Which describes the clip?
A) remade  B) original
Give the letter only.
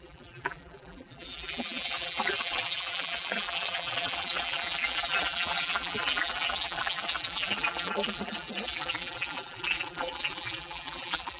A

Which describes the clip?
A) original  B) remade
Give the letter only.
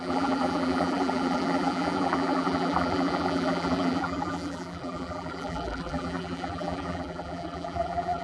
B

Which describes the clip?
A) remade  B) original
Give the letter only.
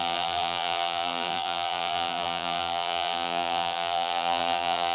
A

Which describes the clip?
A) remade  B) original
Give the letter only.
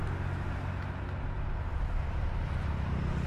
B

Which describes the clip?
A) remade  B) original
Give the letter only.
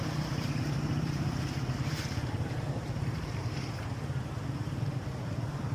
A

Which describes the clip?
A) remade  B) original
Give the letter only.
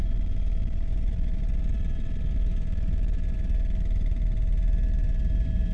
A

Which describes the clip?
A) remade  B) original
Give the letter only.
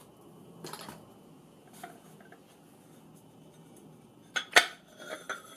B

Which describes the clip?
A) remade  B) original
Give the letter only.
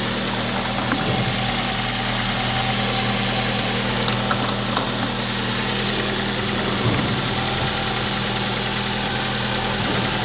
B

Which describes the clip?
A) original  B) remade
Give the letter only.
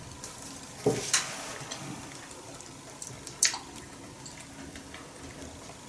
A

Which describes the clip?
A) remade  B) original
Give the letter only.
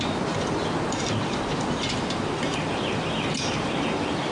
A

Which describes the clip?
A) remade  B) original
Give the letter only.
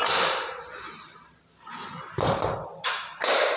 B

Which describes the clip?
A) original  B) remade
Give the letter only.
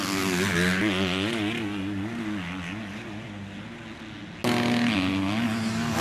A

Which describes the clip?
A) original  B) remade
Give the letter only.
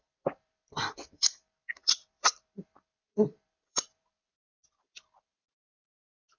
B